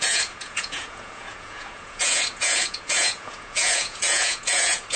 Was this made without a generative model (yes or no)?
no